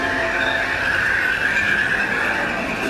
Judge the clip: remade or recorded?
recorded